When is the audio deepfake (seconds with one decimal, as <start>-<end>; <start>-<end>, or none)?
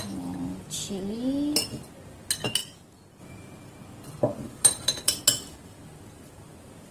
2.6-3.2; 4.3-5.2